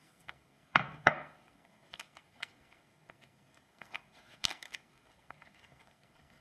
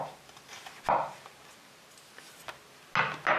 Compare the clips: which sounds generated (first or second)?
first